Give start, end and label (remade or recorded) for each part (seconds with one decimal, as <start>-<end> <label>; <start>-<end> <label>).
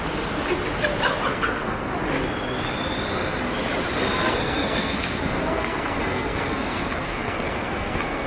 0.0-1.3 recorded; 1.3-1.9 remade; 1.9-4.2 recorded; 4.2-8.3 remade